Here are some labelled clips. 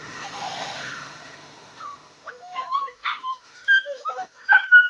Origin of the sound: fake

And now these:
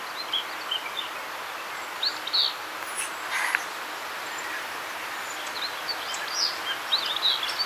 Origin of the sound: real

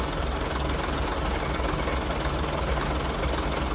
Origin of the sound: real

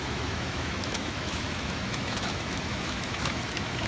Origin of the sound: fake